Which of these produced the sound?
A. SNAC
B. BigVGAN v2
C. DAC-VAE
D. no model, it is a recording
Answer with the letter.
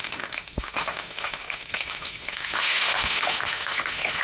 C